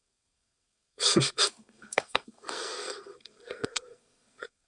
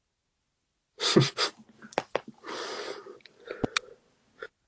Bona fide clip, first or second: second